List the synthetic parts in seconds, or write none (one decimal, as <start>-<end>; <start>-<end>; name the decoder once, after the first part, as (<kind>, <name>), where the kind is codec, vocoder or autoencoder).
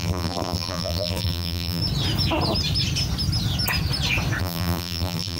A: 0.0-1.8 (vocoder, BigVGAN v2); 4.4-5.4